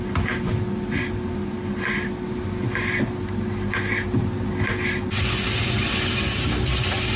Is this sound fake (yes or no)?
no